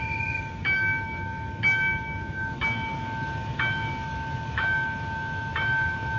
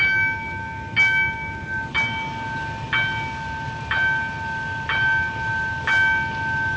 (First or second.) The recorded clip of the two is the second